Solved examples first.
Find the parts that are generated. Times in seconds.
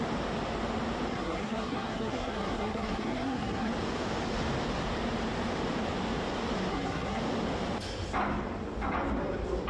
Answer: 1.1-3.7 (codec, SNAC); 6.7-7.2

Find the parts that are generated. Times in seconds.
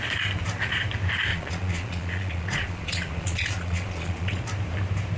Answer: 1.3-4.4 (vocoder, Vocos)